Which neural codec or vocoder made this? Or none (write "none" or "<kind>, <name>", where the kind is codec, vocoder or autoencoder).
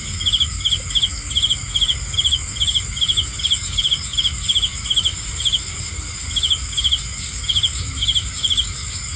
codec, DAC